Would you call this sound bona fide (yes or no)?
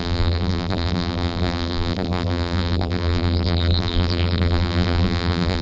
no